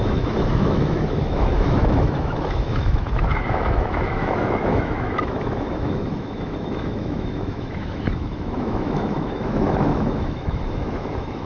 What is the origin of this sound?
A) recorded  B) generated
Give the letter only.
B